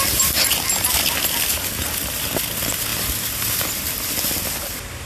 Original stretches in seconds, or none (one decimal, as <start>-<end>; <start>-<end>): 0.0-5.1